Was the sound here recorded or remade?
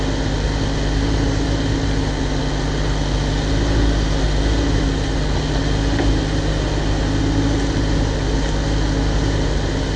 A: recorded